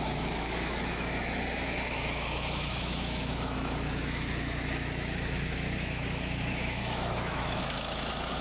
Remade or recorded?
remade